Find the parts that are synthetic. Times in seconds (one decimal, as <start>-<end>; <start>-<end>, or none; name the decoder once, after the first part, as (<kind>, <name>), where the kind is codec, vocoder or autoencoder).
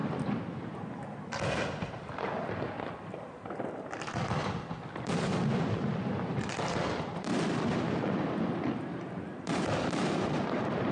1.9-10.9 (vocoder, BigVGAN v2)